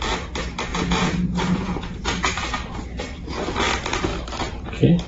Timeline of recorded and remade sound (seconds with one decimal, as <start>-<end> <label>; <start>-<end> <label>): 0.0-0.7 recorded; 0.7-2.3 remade; 2.3-5.1 recorded